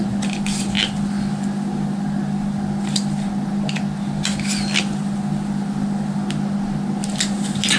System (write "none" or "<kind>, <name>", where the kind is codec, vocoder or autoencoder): none